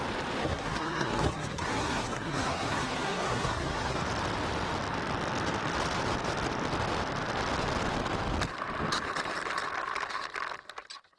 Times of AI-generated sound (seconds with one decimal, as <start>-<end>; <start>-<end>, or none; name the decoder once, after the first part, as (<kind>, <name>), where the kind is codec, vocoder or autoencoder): 0.4-4.0 (codec, SNAC)